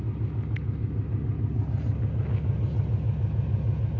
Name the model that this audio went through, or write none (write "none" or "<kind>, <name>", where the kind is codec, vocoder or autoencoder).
none